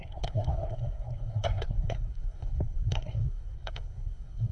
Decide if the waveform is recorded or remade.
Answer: remade